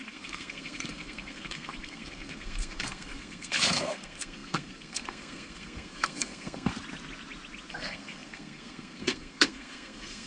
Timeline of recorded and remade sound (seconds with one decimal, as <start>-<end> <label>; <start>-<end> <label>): 0.0-6.7 remade; 6.7-7.7 recorded; 7.7-10.3 remade